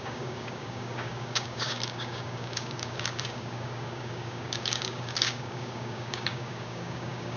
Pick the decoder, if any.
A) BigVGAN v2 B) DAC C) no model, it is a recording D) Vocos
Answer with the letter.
B